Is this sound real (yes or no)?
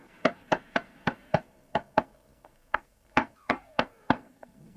no